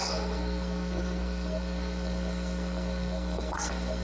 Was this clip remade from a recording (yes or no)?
yes